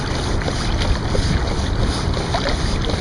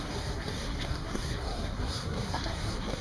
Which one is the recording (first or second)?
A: first